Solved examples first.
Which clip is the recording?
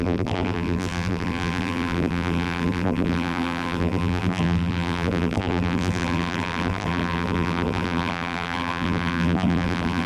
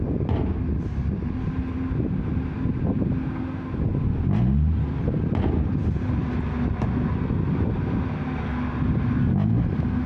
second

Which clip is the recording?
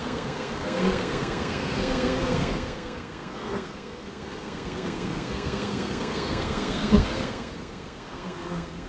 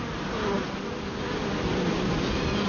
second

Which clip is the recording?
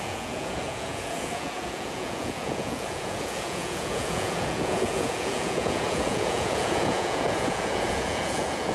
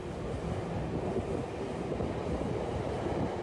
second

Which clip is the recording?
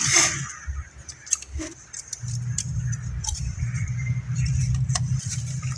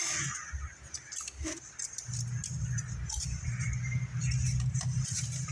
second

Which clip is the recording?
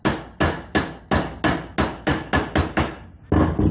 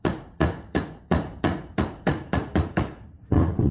first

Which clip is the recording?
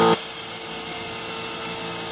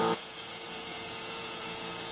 first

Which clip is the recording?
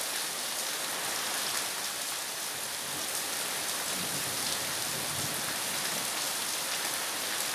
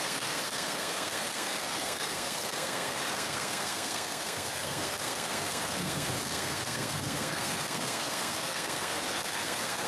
first